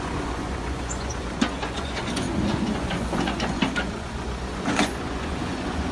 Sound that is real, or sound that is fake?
fake